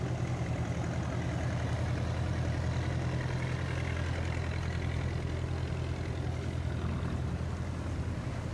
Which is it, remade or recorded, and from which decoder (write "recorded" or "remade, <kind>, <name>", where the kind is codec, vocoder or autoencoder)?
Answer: recorded